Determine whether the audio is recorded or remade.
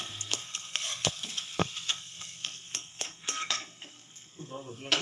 remade